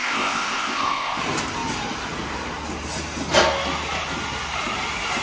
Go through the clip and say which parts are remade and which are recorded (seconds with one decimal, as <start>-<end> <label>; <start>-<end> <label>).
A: 0.0-1.2 remade; 1.2-5.2 recorded